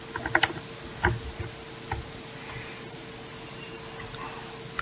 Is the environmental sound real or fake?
real